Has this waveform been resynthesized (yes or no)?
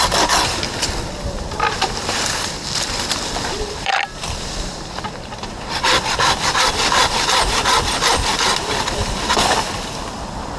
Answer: yes